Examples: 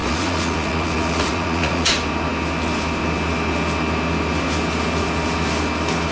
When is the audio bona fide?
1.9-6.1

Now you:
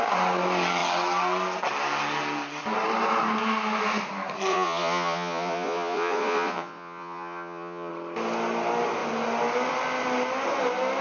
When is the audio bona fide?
0.0-4.5; 7.9-11.0

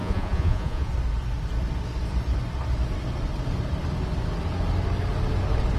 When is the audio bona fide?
0.9-5.8

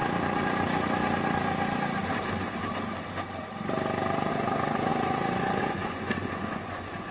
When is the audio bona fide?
0.0-4.3